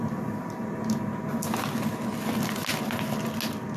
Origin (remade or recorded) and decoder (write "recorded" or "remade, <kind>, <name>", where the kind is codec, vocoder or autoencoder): recorded